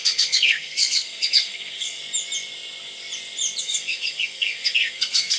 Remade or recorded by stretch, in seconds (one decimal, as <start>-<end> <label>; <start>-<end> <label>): 0.0-2.0 remade; 2.0-3.6 recorded; 3.6-5.4 remade